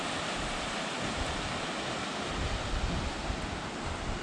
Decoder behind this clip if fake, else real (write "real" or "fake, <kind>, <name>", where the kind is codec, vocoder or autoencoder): real